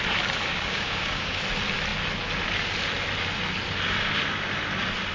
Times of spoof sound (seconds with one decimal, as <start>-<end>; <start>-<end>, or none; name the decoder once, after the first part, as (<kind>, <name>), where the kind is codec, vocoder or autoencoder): 0.5-1.4 (codec, DAC)